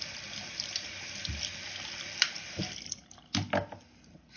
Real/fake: real